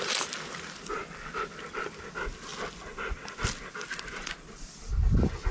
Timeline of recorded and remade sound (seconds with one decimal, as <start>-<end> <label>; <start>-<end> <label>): 0.0-5.5 recorded